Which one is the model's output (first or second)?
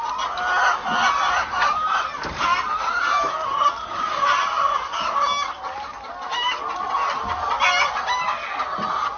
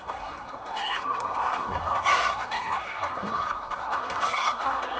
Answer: second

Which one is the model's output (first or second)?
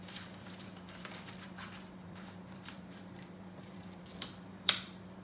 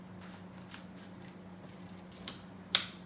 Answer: first